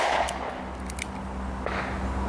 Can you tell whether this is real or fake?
real